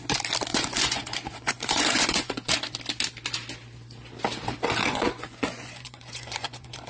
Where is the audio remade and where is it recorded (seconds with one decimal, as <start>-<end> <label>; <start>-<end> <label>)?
0.0-0.5 recorded; 0.5-2.5 remade; 2.5-4.8 recorded; 4.8-6.9 remade